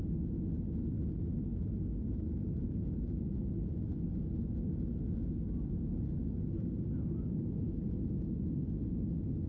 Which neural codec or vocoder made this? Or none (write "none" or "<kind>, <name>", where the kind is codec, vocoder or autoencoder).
none